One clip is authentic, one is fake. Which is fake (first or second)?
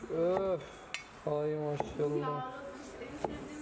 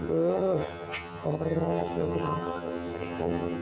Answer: second